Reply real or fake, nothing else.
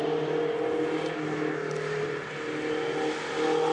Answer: real